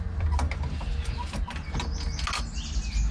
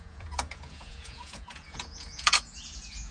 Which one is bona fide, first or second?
first